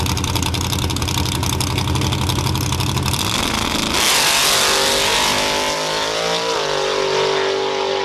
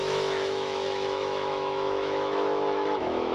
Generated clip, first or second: second